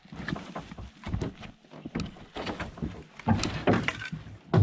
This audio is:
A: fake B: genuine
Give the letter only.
B